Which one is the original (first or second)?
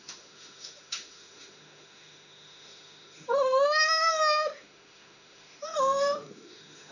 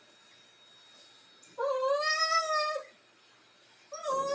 second